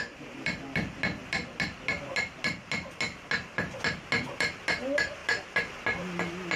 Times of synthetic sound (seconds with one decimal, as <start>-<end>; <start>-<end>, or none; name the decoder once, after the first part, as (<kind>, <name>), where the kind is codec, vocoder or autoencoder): none